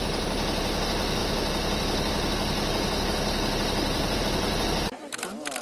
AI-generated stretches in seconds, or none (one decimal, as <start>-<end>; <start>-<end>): none